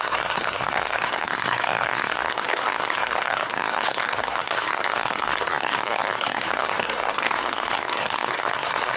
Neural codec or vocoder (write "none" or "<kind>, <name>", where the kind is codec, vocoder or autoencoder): codec, SNAC